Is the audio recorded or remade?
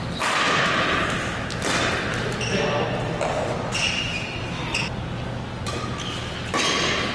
recorded